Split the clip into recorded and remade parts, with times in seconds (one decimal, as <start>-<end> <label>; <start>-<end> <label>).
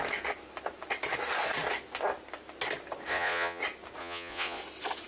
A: 0.0-3.1 recorded; 3.1-3.6 remade; 3.6-4.0 recorded; 4.0-4.6 remade; 4.6-5.1 recorded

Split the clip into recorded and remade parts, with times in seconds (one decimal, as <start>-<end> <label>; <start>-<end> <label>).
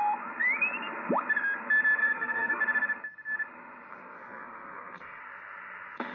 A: 0.0-2.0 recorded; 2.0-2.6 remade; 2.6-3.9 recorded; 3.9-5.2 remade; 5.2-6.1 recorded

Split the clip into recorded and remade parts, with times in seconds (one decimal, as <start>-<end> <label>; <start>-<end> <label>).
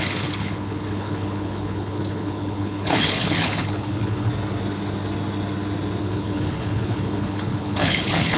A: 0.0-4.3 remade; 4.3-6.0 recorded; 6.0-8.4 remade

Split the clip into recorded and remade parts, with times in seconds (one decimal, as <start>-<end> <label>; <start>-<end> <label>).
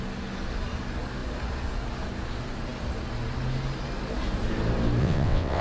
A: 0.0-5.0 recorded; 5.0-5.6 remade